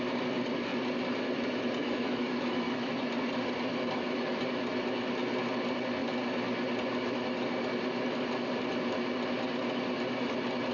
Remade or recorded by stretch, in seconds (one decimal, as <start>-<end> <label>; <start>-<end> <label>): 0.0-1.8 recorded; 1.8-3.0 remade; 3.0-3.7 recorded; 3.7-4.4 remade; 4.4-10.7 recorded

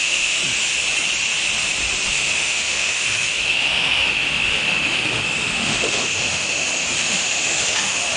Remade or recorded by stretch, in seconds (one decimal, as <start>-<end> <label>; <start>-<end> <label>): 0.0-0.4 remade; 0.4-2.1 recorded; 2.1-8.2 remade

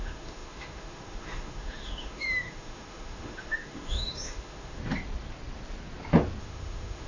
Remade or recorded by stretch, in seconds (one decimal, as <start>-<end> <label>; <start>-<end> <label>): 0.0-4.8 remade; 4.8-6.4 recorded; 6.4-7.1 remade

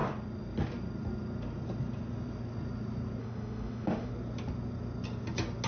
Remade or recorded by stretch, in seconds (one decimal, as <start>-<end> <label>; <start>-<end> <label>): 0.0-3.2 recorded; 3.2-4.1 remade; 4.1-5.7 recorded

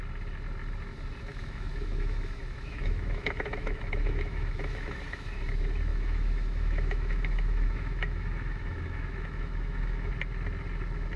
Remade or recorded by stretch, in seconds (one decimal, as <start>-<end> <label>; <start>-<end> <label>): 0.0-1.3 recorded; 1.3-5.3 remade; 5.3-5.9 recorded; 5.9-10.1 remade; 10.1-11.2 recorded

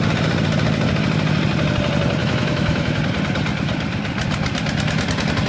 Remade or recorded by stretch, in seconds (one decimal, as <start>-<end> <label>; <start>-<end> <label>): 0.0-2.2 recorded; 2.2-3.0 remade; 3.0-5.5 recorded

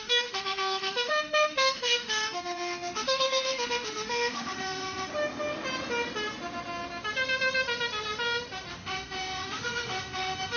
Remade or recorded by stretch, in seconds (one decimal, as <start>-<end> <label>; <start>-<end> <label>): 0.0-5.1 remade; 5.1-8.7 recorded; 8.7-10.6 remade

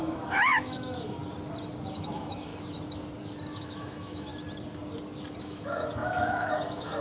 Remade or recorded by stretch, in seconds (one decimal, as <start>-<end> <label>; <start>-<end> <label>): 0.0-1.2 remade; 1.2-1.9 recorded; 1.9-2.5 remade; 2.5-3.6 recorded; 3.6-4.3 remade; 4.3-5.4 recorded; 5.4-7.0 remade